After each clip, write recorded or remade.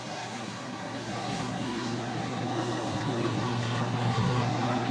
remade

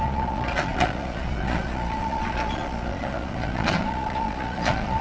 remade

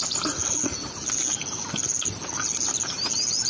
recorded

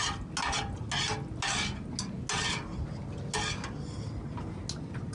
recorded